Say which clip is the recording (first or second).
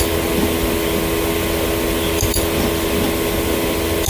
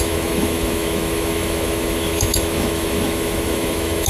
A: first